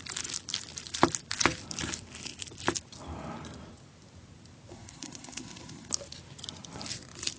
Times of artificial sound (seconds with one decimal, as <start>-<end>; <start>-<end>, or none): 4.7-5.9